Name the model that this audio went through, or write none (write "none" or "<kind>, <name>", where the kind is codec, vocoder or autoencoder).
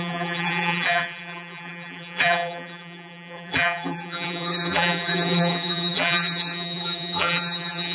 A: vocoder, BigVGAN v2